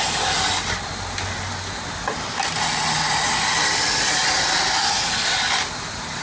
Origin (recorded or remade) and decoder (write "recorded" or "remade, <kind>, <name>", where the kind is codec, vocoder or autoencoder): recorded